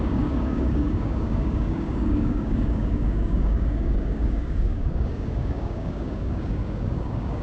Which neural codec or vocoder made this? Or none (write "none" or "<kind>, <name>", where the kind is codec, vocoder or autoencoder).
codec, DAC